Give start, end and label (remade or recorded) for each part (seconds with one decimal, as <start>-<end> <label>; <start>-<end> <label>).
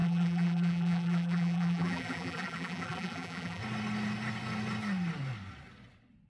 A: 0.0-3.6 remade; 3.6-6.3 recorded